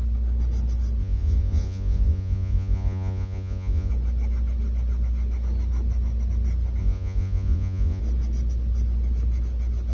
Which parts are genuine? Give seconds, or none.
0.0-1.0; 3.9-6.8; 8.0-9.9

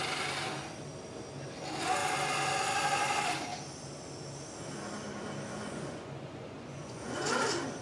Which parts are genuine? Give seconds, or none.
0.0-5.5; 7.3-7.8

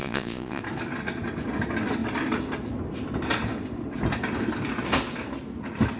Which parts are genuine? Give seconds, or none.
0.6-6.0

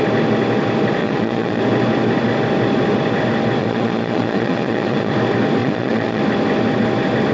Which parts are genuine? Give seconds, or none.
0.0-1.0; 1.6-3.6; 5.1-5.6; 6.2-7.3

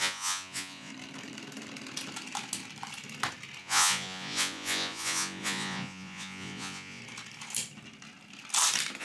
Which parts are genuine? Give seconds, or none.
0.9-3.6; 7.0-9.0

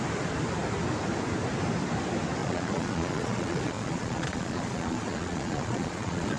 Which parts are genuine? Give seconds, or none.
0.0-2.4